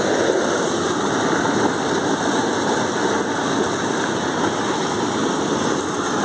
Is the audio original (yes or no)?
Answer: yes